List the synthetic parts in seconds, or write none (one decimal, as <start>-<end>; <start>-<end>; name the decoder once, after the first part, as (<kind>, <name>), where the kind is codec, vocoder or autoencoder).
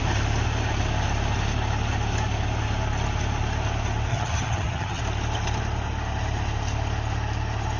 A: 4.1-5.0 (vocoder, HiFi-GAN)